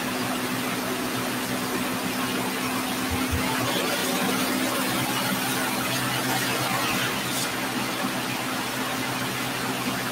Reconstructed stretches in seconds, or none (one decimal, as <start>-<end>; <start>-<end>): none